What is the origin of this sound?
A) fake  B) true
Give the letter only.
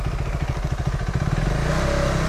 B